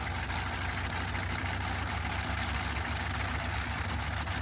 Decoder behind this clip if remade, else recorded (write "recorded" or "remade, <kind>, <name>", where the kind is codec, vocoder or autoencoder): recorded